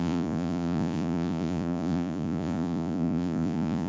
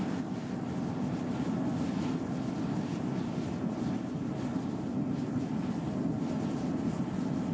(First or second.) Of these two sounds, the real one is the second